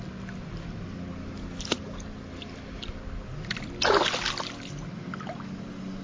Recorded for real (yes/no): yes